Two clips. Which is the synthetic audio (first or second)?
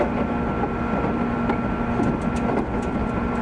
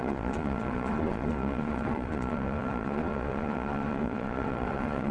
second